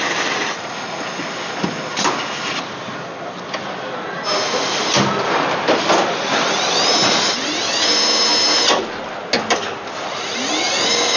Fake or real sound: real